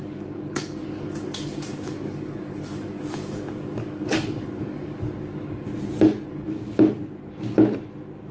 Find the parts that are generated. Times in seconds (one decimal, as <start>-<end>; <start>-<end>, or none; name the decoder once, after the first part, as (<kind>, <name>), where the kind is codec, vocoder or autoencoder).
0.0-5.7 (codec, DAC); 6.3-7.0